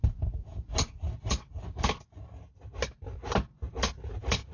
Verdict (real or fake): real